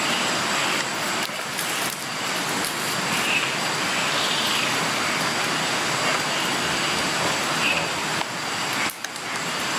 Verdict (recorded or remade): recorded